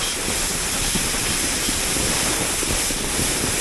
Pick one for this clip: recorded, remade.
remade